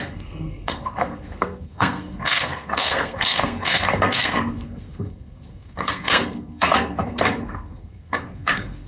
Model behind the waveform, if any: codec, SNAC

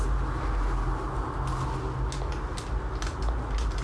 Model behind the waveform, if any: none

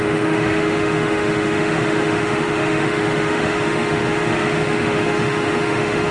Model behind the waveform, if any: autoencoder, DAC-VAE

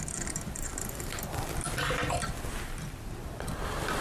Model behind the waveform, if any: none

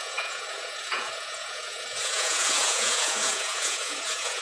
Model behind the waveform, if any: vocoder, Vocos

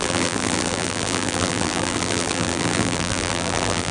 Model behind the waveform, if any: vocoder, BigVGAN v2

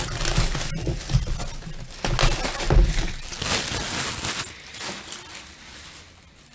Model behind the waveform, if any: none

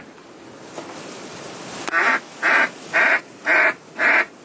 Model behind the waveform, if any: none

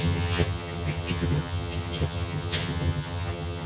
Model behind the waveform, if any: vocoder, HiFi-GAN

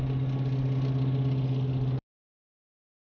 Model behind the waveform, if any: none